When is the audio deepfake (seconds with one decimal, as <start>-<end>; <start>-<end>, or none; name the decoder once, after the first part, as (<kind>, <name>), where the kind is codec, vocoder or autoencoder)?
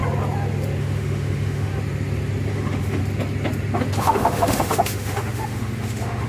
0.8-1.7 (autoencoder, DAC-VAE); 2.5-3.0; 4.0-6.3